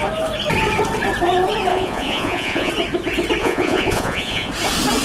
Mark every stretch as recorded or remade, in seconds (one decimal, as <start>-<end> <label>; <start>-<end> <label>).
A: 0.0-1.7 recorded; 1.7-2.7 remade; 2.7-3.4 recorded; 3.4-4.5 remade; 4.5-5.0 recorded